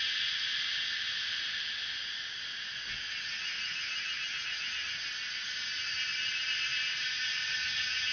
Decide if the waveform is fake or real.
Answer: real